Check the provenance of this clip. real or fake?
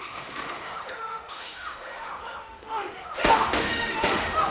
fake